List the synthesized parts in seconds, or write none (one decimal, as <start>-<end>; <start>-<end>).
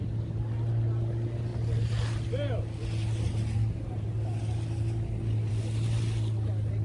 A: none